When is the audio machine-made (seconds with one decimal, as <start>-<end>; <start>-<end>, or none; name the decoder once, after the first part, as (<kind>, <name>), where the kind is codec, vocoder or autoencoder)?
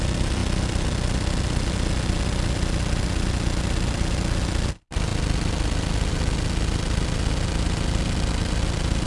none